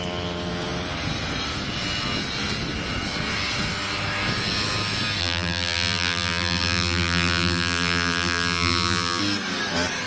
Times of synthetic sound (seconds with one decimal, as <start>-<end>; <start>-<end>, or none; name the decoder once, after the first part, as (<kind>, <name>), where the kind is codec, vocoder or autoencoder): 5.2-9.2 (vocoder, BigVGAN v2)